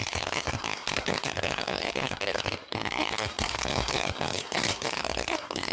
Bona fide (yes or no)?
no